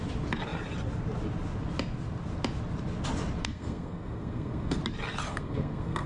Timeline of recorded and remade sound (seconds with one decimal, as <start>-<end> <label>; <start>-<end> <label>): 0.0-3.4 recorded; 3.4-4.8 remade; 4.8-5.3 recorded; 5.3-6.1 remade